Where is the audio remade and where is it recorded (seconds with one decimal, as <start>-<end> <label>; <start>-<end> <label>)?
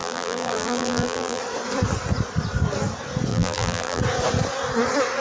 0.0-1.4 remade; 1.4-3.3 recorded; 3.3-4.0 remade; 4.0-5.2 recorded